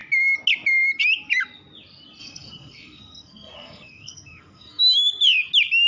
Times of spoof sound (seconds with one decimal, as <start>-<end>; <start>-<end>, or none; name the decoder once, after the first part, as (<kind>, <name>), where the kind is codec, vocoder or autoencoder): 2.2-4.8 (codec, SNAC)